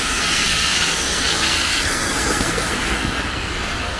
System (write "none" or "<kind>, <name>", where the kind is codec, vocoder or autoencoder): codec, SNAC